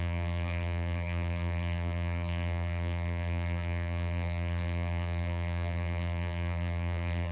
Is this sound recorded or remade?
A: remade